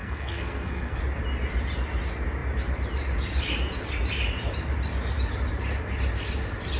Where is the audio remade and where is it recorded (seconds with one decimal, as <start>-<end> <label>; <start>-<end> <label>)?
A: 0.0-1.0 remade; 1.0-6.8 recorded